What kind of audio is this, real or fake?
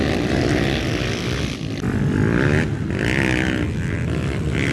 real